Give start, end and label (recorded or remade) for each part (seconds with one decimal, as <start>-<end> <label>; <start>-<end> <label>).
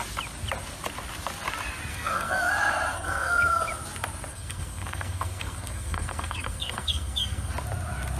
0.0-1.9 recorded; 1.9-2.5 remade; 2.5-2.9 recorded; 2.9-3.6 remade; 3.6-4.3 recorded; 4.3-7.5 remade; 7.5-8.2 recorded